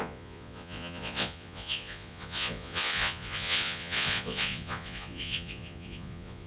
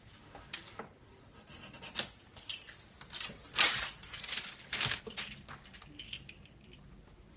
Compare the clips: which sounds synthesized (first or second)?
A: first